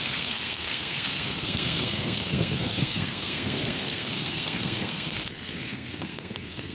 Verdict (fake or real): fake